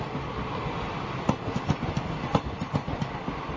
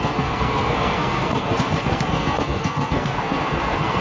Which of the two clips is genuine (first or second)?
first